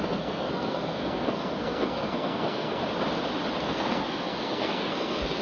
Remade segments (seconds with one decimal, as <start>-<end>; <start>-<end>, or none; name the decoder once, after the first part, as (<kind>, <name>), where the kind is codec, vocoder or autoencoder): 0.0-2.8 (codec, SNAC); 3.6-5.4